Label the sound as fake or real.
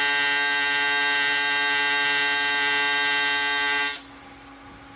real